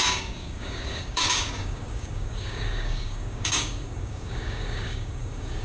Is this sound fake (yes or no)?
yes